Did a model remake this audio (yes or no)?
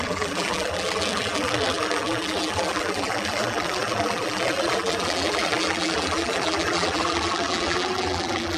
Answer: yes